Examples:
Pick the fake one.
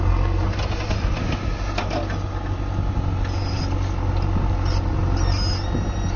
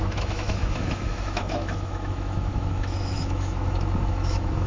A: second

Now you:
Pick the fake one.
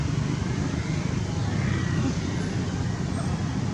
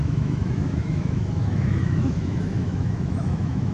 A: second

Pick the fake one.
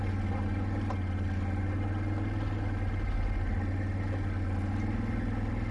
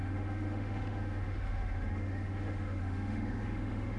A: second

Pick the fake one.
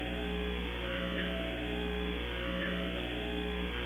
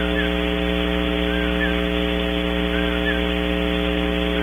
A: first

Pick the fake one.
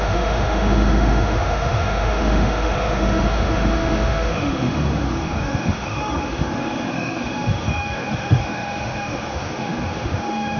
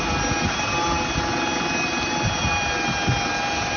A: first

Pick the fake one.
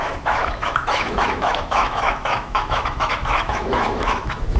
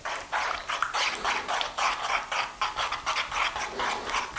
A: first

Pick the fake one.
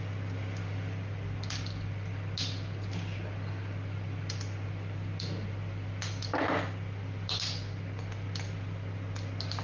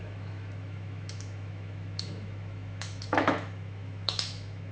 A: second